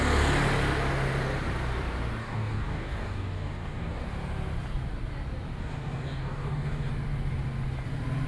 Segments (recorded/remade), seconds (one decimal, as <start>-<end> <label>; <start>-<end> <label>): 0.0-2.2 recorded; 2.2-4.0 remade; 4.0-5.6 recorded; 5.6-6.9 remade; 6.9-8.3 recorded